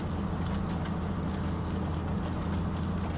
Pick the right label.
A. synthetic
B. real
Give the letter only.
B